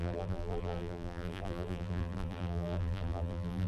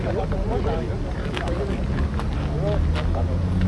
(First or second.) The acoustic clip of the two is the second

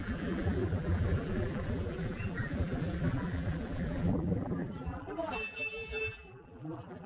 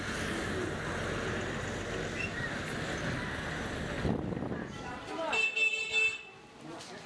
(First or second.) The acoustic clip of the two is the second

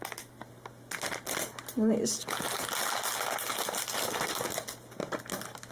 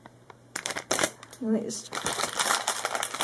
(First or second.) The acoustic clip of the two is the first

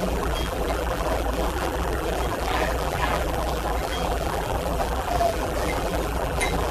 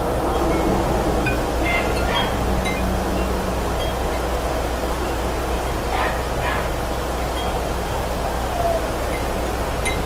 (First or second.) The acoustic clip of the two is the second